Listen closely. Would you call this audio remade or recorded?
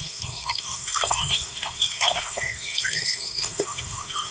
remade